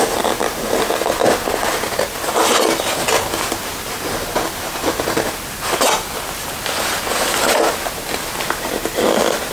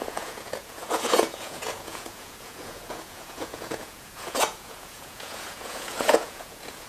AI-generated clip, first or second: second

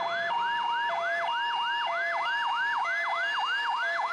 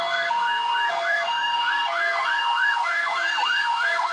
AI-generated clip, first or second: second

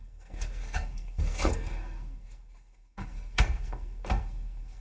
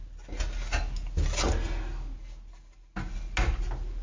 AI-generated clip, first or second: first